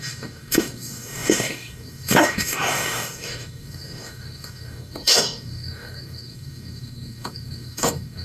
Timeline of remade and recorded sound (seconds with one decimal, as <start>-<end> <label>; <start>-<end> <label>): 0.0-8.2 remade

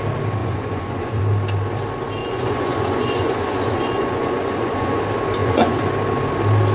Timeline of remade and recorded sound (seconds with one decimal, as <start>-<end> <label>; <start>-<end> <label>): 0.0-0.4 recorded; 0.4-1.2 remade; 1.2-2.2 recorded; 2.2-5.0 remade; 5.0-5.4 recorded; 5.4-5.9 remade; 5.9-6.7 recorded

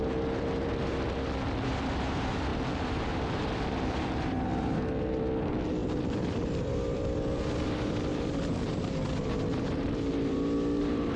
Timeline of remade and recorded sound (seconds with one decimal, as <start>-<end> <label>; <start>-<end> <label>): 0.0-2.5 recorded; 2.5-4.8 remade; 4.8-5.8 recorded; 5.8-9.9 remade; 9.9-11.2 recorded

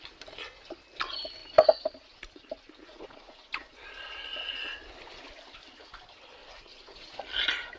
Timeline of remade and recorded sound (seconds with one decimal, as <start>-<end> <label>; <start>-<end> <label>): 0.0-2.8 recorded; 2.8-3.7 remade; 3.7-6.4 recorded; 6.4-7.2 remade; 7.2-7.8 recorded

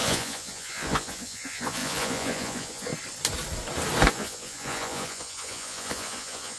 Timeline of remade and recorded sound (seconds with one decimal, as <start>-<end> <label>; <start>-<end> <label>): 0.0-2.9 remade; 2.9-4.1 recorded; 4.1-6.6 remade

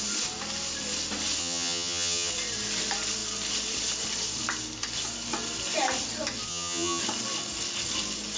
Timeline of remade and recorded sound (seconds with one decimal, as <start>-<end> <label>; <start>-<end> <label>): 0.0-1.4 recorded; 1.4-2.3 remade; 2.3-6.5 recorded; 6.5-7.0 remade; 7.0-8.4 recorded

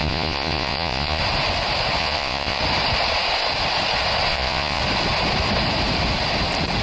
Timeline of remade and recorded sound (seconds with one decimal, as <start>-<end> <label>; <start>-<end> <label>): 0.0-1.2 remade; 1.2-2.0 recorded; 2.0-2.6 remade; 2.6-4.3 recorded; 4.3-4.8 remade; 4.8-6.8 recorded

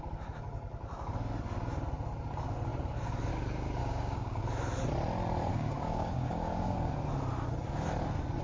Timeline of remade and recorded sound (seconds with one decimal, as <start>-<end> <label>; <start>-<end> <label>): 0.0-3.8 recorded; 3.8-4.4 remade; 4.4-5.5 recorded; 5.5-6.9 remade; 6.9-8.4 recorded